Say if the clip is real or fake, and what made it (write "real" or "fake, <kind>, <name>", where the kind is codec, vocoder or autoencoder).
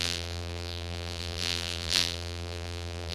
fake, vocoder, BigVGAN v2